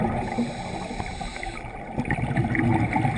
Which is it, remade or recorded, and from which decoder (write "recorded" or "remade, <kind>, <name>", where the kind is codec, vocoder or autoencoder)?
recorded